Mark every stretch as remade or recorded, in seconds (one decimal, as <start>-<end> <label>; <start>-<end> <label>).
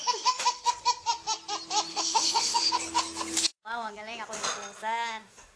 0.0-0.7 remade; 0.7-1.9 recorded; 1.9-2.7 remade; 2.7-4.8 recorded; 4.8-5.6 remade